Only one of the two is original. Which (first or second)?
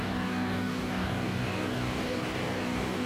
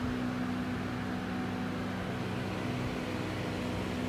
second